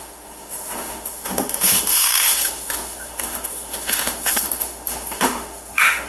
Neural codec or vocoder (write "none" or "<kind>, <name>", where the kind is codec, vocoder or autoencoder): autoencoder, DAC-VAE